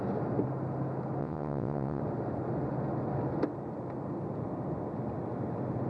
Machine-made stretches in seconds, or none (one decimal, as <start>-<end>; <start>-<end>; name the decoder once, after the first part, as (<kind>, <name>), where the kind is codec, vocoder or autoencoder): 1.2-2.0 (vocoder, WaveNeXt)